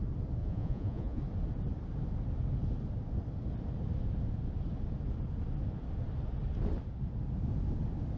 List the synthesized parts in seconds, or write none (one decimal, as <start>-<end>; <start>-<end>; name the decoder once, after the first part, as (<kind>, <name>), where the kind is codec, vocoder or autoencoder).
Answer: 0.4-1.2 (vocoder, Vocos)